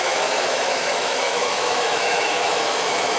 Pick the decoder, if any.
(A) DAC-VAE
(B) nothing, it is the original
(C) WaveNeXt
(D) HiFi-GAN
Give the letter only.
A